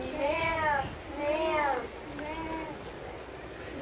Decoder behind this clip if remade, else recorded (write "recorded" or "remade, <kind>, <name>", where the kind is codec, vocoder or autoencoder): recorded